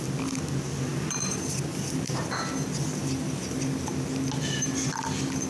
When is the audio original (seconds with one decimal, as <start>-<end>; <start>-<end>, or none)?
0.0-0.9; 2.2-3.0; 3.9-5.5